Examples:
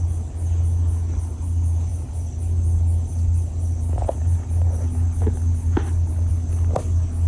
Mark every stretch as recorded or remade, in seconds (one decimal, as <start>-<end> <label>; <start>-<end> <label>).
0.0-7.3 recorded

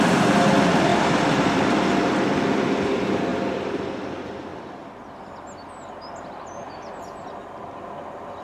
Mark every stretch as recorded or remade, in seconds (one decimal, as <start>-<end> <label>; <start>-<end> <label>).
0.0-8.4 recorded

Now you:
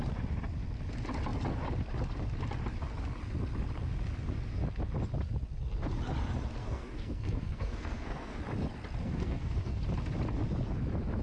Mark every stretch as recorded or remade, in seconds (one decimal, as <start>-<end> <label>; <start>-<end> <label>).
0.0-6.6 recorded; 6.6-8.4 remade; 8.4-9.0 recorded; 9.0-9.8 remade; 9.8-11.2 recorded

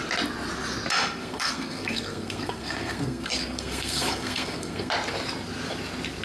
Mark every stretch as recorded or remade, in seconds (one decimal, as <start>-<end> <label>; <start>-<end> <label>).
0.0-1.2 recorded; 1.2-4.9 remade; 4.9-6.2 recorded

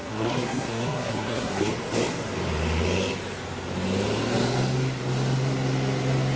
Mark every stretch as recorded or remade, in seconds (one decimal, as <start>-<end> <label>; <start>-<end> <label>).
0.0-1.7 remade; 1.7-6.4 recorded

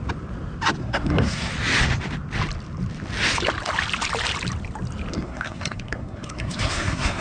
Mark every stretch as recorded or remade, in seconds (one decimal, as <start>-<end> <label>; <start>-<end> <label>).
0.0-0.8 recorded; 0.8-1.5 remade; 1.5-5.1 recorded; 5.1-7.2 remade

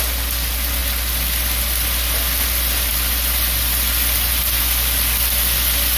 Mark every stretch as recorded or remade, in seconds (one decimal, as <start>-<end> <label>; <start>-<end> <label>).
0.0-6.0 recorded

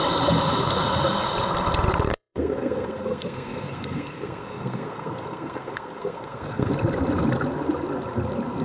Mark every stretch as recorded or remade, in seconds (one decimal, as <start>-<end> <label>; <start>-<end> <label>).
0.0-2.1 recorded; 2.1-6.7 remade; 6.7-8.6 recorded